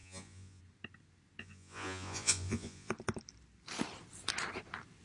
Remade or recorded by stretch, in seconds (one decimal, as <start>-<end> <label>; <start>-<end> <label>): 0.0-0.6 remade; 0.6-1.4 recorded; 1.4-2.9 remade; 2.9-5.0 recorded

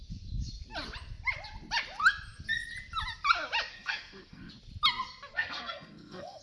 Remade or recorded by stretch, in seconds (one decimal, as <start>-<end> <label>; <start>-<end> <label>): 0.0-3.7 recorded; 3.7-4.5 remade; 4.5-5.3 recorded; 5.3-6.4 remade

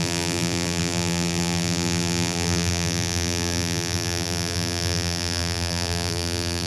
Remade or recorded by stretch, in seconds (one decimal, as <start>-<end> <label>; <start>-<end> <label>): 0.0-6.7 remade

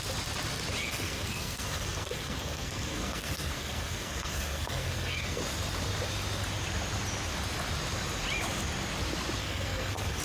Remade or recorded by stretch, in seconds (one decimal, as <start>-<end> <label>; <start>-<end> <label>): 0.0-0.8 recorded; 0.8-5.4 remade; 5.4-9.4 recorded; 9.4-10.2 remade

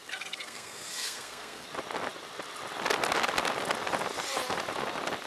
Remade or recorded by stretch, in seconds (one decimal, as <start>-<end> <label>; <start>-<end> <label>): 0.0-1.7 remade; 1.7-5.3 recorded